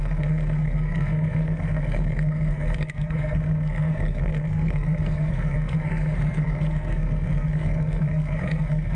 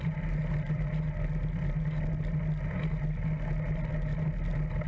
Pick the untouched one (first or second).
second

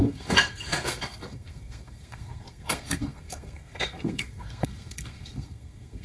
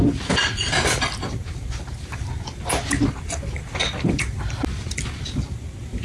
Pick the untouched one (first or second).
second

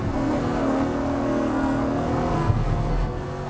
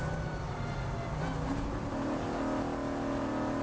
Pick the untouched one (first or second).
second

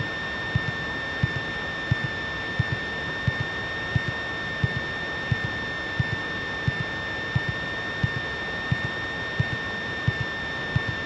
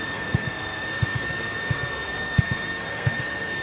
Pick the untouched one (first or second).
first